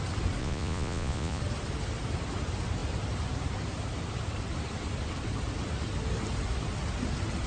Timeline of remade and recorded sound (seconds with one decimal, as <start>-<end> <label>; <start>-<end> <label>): 0.0-0.4 recorded; 0.4-1.4 remade; 1.4-7.5 recorded